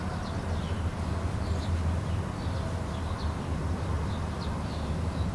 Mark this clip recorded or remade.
recorded